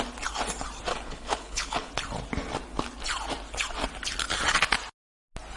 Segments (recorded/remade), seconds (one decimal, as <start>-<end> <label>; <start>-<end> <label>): 0.0-0.9 recorded; 0.9-1.9 remade; 1.9-5.6 recorded